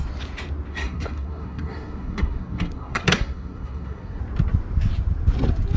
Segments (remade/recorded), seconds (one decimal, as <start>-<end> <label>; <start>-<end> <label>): 0.0-0.7 recorded; 0.7-4.2 remade; 4.2-5.8 recorded